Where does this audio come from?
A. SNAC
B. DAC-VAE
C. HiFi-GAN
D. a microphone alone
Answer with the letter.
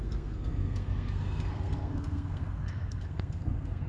A